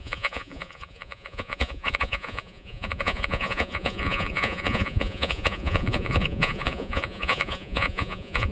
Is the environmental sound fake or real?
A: fake